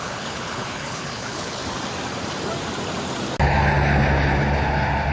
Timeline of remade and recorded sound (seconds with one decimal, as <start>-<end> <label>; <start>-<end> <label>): 0.0-1.6 remade; 1.6-5.1 recorded